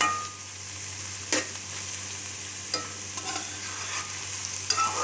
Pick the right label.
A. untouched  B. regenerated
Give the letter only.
A